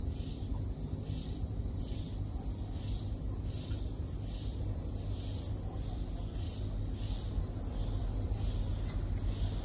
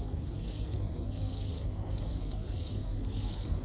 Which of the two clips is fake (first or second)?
second